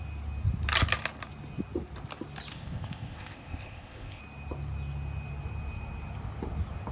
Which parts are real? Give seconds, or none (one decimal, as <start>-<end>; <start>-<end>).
0.0-2.5; 4.2-6.9